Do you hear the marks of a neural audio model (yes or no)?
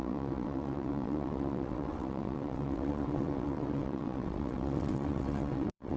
yes